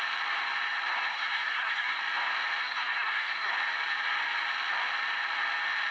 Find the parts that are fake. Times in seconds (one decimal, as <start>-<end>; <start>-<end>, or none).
1.1-2.0; 2.6-3.5